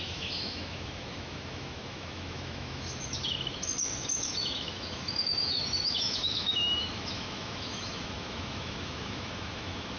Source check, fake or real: fake